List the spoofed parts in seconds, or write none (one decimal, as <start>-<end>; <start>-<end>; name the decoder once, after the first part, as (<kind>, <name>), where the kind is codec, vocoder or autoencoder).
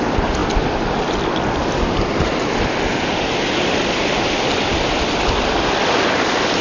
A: none